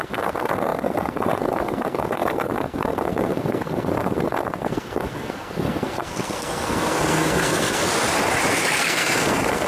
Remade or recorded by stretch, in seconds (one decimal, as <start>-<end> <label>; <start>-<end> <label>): 0.0-7.9 remade; 7.9-8.5 recorded; 8.5-9.7 remade